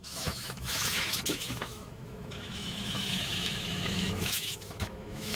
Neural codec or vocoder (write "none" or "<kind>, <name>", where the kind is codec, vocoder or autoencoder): autoencoder, DAC-VAE